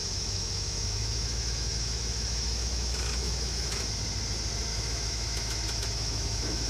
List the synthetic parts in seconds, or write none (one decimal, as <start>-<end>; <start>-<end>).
0.0-3.9; 4.7-6.7